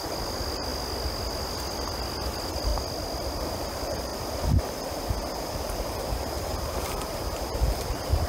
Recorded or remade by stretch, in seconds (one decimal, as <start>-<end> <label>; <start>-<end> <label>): 0.0-8.3 recorded